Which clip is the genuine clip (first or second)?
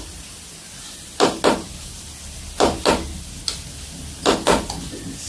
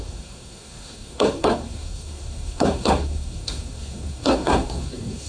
first